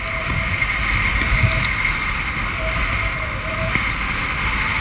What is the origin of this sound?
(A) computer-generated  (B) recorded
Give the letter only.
B